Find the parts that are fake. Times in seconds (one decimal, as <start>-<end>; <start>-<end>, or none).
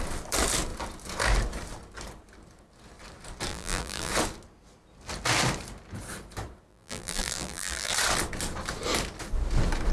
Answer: 3.5-4.1; 6.7-7.9